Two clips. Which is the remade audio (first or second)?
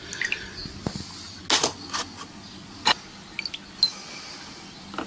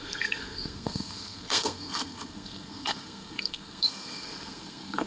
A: second